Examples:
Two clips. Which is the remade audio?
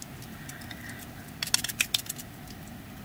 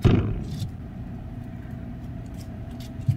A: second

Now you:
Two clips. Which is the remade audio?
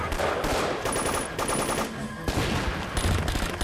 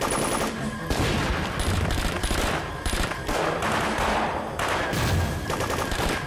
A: second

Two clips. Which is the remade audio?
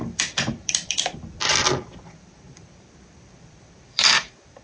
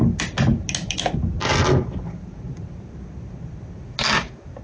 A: first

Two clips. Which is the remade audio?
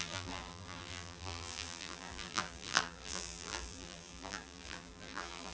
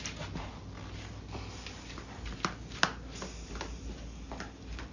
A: first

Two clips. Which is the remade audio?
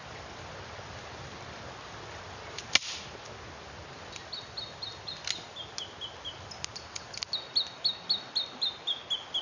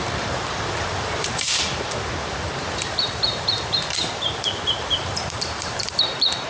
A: second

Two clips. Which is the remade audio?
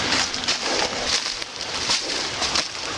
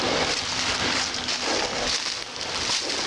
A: first